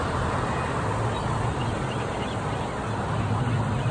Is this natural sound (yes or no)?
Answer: yes